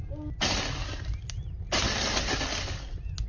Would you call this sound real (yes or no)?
yes